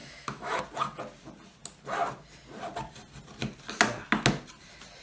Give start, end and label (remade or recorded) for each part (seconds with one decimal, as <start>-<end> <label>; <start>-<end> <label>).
0.0-0.6 remade; 0.6-5.0 recorded